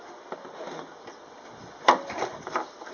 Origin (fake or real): real